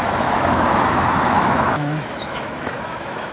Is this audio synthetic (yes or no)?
yes